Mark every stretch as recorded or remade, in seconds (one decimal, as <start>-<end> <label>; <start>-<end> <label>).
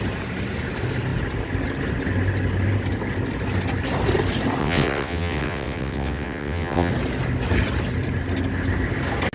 0.0-4.6 recorded; 4.6-6.9 remade; 6.9-9.3 recorded